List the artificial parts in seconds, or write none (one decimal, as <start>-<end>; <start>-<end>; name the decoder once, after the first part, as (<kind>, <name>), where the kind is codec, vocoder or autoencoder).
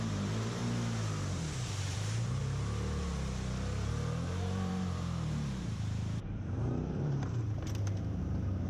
0.0-0.6 (vocoder, BigVGAN v2); 1.8-2.4; 3.9-8.7